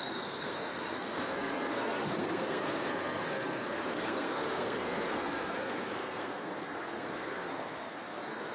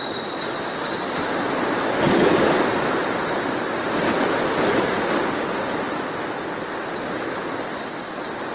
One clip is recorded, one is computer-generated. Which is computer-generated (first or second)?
first